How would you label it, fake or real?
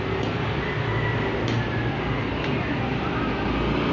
real